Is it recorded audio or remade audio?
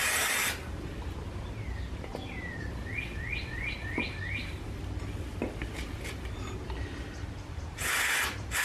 recorded